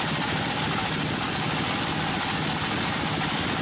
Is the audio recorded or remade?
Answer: recorded